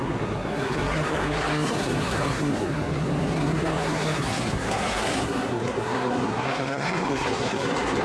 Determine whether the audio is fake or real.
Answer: fake